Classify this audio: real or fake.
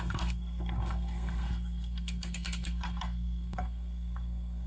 fake